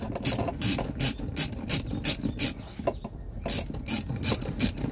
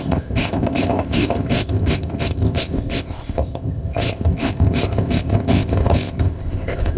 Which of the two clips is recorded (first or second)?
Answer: first